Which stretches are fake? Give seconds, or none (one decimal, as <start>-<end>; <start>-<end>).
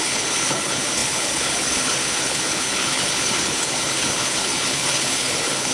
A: 0.0-5.7